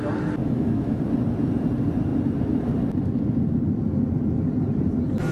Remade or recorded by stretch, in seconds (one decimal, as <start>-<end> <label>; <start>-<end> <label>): 0.0-0.4 recorded; 0.4-1.0 remade; 1.0-5.3 recorded

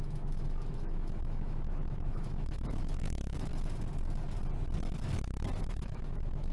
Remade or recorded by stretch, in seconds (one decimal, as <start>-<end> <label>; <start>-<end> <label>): 0.0-3.5 remade; 3.5-5.6 recorded; 5.6-6.5 remade

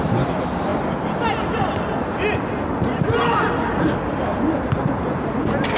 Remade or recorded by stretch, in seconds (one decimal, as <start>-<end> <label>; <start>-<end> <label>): 0.0-5.8 recorded

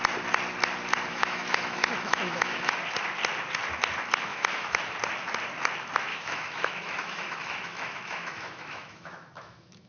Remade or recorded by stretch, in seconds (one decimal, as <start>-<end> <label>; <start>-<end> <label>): 0.0-1.1 recorded; 1.1-2.7 remade; 2.7-4.3 recorded; 4.3-4.8 remade; 4.8-6.1 recorded; 6.1-9.9 remade